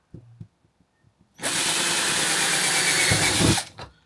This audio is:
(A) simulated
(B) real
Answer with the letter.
B